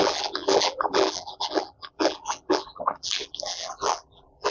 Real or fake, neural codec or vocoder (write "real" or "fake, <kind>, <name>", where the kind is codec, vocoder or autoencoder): fake, vocoder, BigVGAN v2